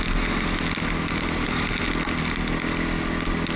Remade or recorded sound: recorded